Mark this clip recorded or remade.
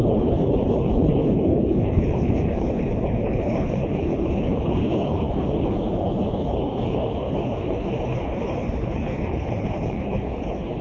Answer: remade